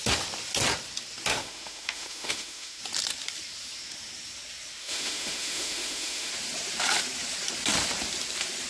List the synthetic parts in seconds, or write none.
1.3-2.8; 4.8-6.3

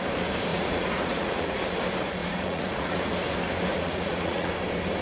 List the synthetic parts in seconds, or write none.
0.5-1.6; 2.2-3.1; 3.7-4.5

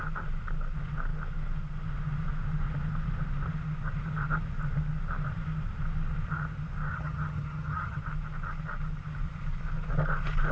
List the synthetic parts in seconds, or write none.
6.9-8.0